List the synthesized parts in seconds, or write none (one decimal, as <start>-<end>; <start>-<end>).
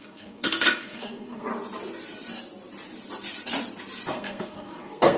0.0-1.5; 4.1-5.2